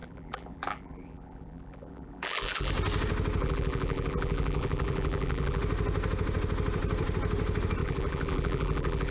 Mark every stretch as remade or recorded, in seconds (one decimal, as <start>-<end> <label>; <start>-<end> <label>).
0.0-2.7 remade; 2.7-3.4 recorded; 3.4-5.6 remade; 5.6-7.8 recorded; 7.8-9.1 remade